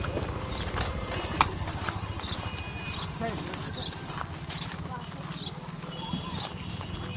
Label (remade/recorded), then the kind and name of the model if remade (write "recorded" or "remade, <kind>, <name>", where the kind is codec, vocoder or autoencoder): recorded